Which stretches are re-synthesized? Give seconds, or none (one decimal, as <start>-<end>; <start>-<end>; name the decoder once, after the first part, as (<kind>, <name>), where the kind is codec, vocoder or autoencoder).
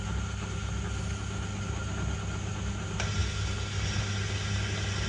none